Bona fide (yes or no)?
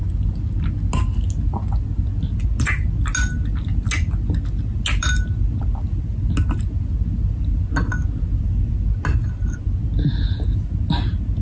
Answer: yes